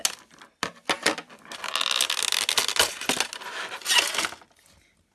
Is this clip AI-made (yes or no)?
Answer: no